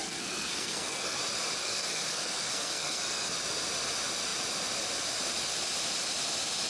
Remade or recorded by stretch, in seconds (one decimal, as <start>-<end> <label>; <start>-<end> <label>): 0.0-1.2 remade; 1.2-1.6 recorded; 1.6-3.3 remade; 3.3-6.7 recorded